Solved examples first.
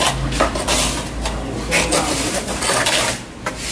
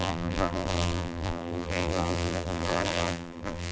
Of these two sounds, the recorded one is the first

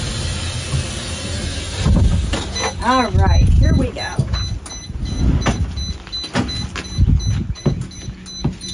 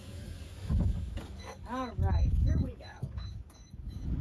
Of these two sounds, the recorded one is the first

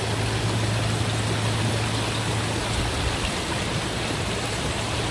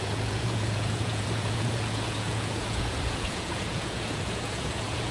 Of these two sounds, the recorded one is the first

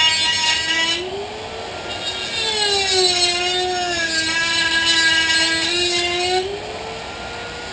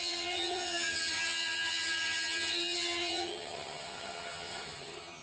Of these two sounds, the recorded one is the first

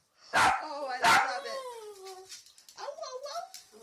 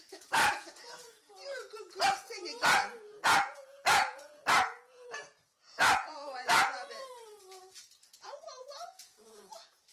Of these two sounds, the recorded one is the first